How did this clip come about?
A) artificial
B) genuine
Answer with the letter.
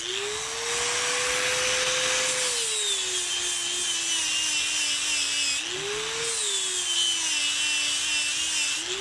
B